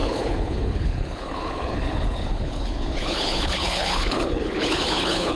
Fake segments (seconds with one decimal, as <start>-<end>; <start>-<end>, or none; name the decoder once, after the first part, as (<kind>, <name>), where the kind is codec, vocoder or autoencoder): 0.0-5.4 (codec, HILCodec)